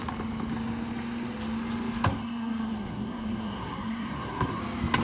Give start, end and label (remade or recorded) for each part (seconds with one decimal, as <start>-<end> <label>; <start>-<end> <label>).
0.0-2.1 recorded; 2.1-4.6 remade; 4.6-5.0 recorded